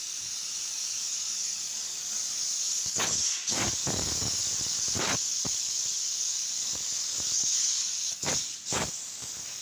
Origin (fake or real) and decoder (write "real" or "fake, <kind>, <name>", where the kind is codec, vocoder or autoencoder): fake, codec, DAC